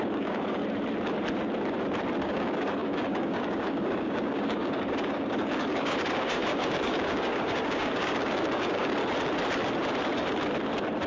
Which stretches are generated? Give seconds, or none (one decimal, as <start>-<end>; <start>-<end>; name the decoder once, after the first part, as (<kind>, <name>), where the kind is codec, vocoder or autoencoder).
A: 0.0-0.6 (codec, DAC); 2.2-9.0